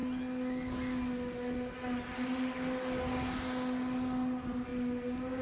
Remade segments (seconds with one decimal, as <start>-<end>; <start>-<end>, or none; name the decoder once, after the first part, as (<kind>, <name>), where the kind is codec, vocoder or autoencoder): none